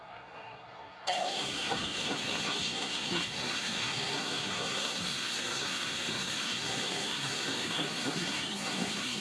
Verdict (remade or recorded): remade